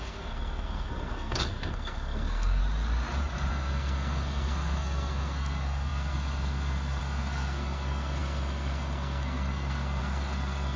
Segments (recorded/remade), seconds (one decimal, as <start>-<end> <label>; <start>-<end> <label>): 0.0-2.6 remade; 2.6-3.5 recorded; 3.5-10.8 remade

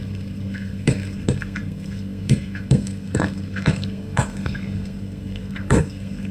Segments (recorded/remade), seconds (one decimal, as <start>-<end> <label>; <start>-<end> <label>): 0.0-6.3 remade

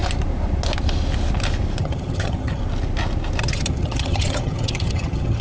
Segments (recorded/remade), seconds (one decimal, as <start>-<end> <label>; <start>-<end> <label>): 0.0-1.8 recorded; 1.8-2.6 remade; 2.6-3.4 recorded; 3.4-5.4 remade

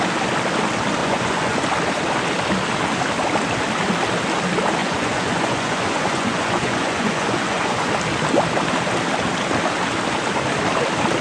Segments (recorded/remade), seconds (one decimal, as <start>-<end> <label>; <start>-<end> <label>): 0.0-1.0 recorded; 1.0-1.6 remade; 1.6-4.8 recorded; 4.8-7.9 remade; 7.9-11.2 recorded

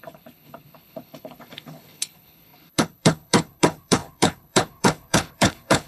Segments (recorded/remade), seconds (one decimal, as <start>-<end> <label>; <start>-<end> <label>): 0.0-5.9 remade

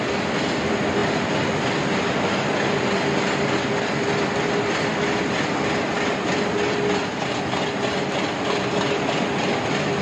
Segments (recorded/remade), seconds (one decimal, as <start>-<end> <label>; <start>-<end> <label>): 0.0-10.0 recorded